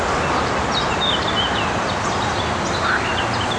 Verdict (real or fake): real